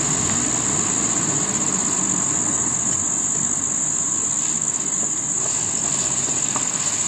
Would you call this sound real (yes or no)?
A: yes